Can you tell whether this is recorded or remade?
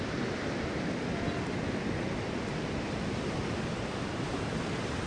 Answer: recorded